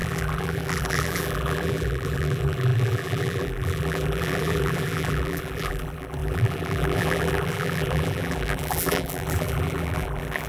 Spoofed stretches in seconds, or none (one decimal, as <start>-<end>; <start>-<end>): 0.0-10.5